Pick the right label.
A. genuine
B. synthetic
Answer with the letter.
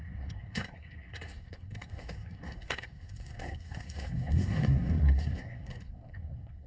B